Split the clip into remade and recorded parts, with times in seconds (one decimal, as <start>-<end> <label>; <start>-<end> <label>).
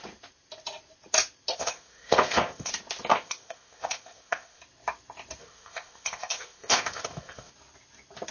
0.0-1.5 recorded; 1.5-2.7 remade; 2.7-3.1 recorded; 3.1-4.6 remade; 4.6-5.4 recorded; 5.4-7.5 remade; 7.5-8.3 recorded